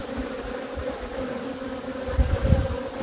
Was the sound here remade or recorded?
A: recorded